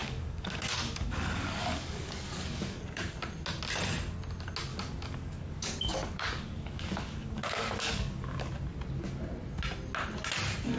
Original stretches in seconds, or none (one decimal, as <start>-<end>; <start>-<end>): 3.1-4.7; 8.5-10.8